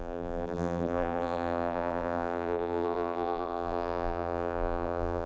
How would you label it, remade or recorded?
remade